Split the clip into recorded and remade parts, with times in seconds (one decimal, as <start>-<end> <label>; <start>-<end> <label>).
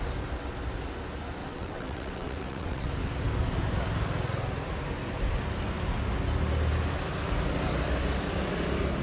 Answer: 0.0-1.4 recorded; 1.4-2.9 remade; 2.9-9.0 recorded